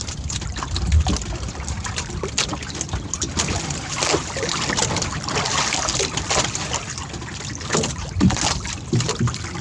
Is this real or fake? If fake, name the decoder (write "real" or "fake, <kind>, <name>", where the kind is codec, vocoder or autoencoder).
real